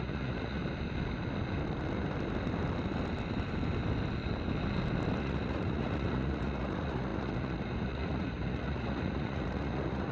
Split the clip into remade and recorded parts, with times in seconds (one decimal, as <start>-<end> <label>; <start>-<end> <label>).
0.0-0.6 remade; 0.6-5.2 recorded; 5.2-10.1 remade